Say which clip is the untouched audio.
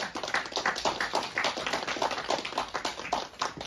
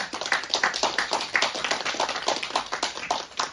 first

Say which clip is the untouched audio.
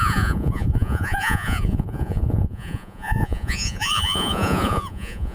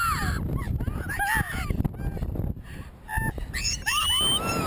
second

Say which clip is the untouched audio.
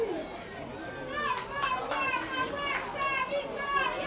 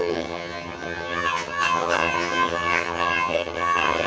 first